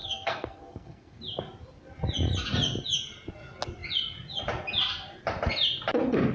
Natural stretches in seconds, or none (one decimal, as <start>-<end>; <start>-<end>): 1.2-6.3